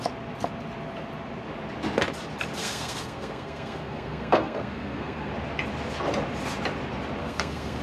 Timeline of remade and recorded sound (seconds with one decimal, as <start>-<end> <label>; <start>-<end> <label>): 0.0-2.6 recorded; 2.6-5.3 remade; 5.3-7.2 recorded; 7.2-7.8 remade

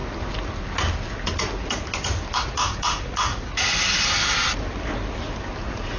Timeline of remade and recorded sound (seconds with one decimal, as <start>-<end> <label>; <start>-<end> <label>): 0.0-2.4 recorded; 2.4-3.3 remade; 3.3-5.6 recorded; 5.6-6.0 remade

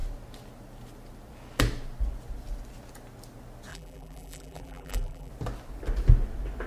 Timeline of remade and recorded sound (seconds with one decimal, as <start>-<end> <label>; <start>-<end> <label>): 0.0-3.7 recorded; 3.7-5.3 remade; 5.3-6.7 recorded

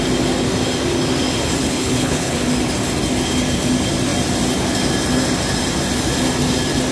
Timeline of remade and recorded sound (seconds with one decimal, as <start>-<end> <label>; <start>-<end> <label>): 0.0-1.6 recorded; 1.6-2.3 remade; 2.3-6.9 recorded